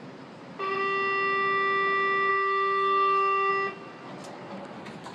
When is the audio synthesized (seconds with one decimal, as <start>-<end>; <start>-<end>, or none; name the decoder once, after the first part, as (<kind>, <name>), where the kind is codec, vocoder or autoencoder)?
2.3-3.5 (codec, SNAC)

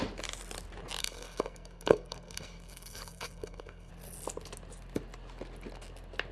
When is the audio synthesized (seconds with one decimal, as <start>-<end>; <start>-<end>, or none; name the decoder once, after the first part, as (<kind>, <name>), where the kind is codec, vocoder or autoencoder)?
1.0-3.9 (codec, SNAC)